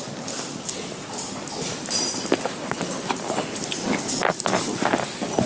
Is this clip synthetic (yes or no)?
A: no